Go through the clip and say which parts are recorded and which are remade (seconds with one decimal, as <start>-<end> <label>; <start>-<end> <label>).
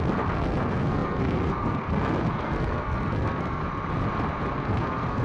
0.0-3.6 remade; 3.6-4.5 recorded; 4.5-5.2 remade